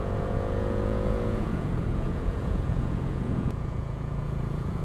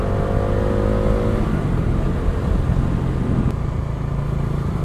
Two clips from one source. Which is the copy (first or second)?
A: first